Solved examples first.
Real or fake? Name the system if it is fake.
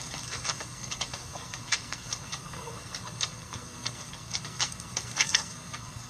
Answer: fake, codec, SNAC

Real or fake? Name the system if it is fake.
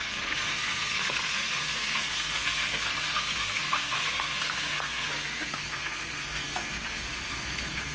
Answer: fake, codec, SNAC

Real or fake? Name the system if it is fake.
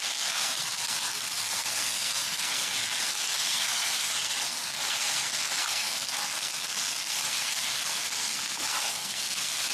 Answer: fake, codec, SNAC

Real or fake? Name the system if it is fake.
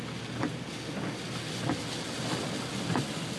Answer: real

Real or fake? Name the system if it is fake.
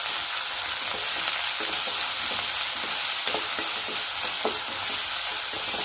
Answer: real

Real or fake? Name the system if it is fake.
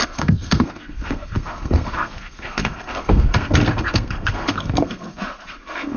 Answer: fake, codec, SNAC